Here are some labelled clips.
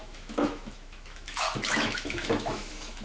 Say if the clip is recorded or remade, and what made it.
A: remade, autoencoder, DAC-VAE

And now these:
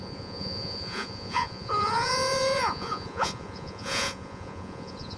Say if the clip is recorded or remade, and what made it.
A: remade, vocoder, Vocos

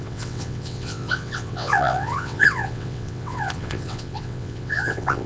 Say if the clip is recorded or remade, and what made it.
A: remade, vocoder, WaveNeXt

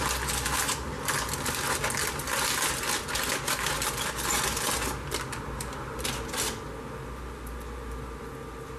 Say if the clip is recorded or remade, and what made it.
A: recorded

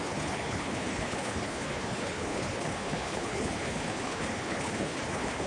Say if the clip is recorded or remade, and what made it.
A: remade, codec, HILCodec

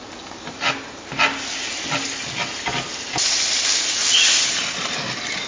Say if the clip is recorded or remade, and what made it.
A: recorded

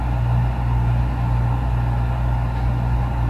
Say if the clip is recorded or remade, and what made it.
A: recorded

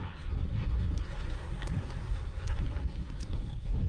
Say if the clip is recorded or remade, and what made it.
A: remade, codec, SNAC